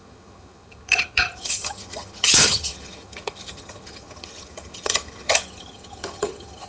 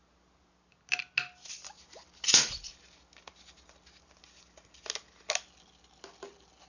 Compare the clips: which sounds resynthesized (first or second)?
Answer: first